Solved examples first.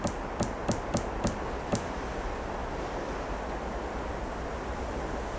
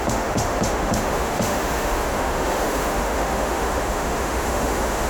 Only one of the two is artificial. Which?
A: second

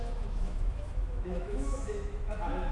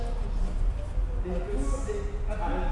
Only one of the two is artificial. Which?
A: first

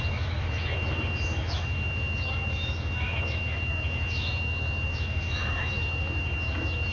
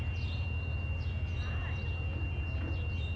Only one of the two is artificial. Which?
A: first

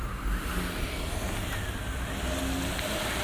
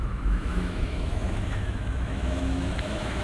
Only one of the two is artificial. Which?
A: second